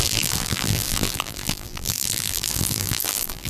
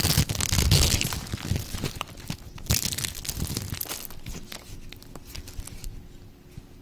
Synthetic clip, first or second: first